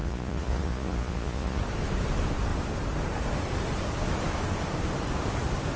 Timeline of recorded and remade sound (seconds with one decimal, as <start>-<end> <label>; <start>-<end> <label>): 0.0-1.6 remade; 1.6-5.8 recorded